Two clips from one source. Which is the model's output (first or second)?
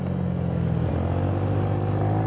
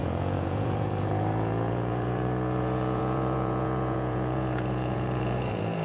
second